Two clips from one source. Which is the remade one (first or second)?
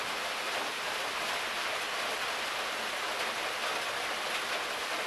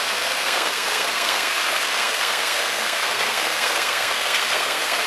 second